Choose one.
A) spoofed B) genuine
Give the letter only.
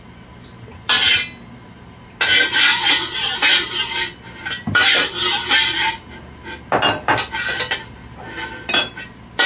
B